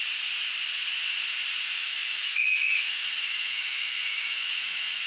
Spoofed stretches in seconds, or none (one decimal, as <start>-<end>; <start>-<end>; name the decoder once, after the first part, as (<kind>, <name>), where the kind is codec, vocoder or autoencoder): 1.8-5.1 (autoencoder, DAC-VAE)